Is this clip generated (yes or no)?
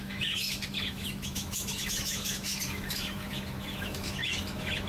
yes